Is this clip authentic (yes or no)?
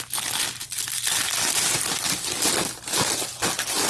yes